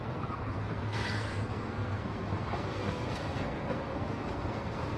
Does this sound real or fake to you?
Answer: fake